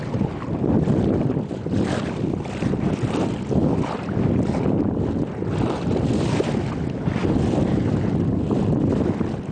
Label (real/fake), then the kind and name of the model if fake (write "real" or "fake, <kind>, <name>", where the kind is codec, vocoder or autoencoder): real